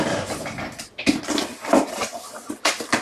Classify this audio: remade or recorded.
recorded